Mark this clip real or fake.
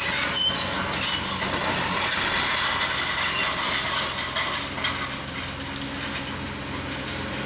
real